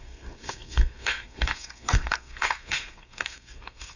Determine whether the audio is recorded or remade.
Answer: remade